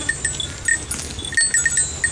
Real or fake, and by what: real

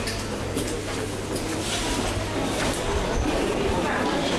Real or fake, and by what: real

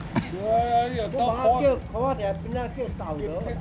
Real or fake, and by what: real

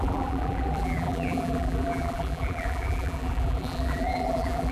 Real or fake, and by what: fake, vocoder, BigVGAN v2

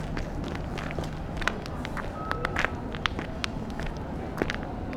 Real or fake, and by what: real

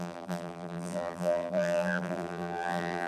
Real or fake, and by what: fake, vocoder, BigVGAN v2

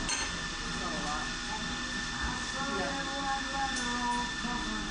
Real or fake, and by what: real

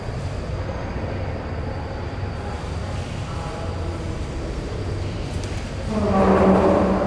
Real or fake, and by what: real